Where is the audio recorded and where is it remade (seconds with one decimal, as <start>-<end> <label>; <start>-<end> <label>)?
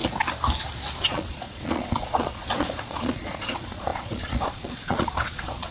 0.0-1.0 recorded; 1.0-5.7 remade